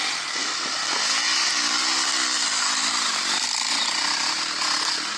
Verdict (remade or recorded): recorded